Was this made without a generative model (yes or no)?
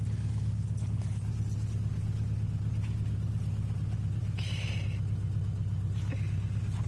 yes